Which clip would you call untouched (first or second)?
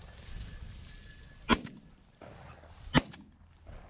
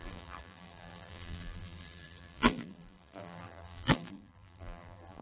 first